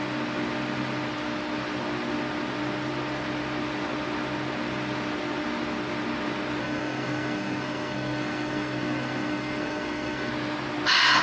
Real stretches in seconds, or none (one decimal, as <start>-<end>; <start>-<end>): 0.0-6.6; 10.3-11.2